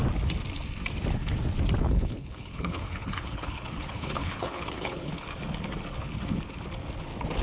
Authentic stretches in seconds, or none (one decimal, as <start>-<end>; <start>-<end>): 0.0-1.8; 5.2-7.4